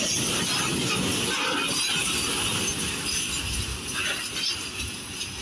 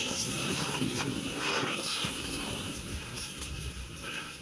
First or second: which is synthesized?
second